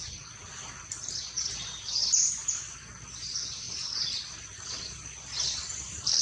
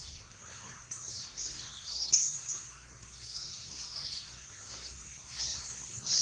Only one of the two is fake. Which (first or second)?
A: second